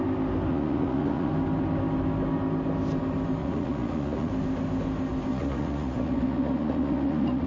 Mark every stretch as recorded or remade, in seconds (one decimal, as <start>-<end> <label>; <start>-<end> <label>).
0.0-0.5 recorded; 0.5-1.3 remade; 1.3-3.4 recorded; 3.4-4.3 remade; 4.3-5.3 recorded; 5.3-7.5 remade